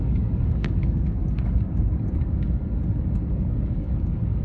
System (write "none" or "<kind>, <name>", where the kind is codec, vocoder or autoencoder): codec, DAC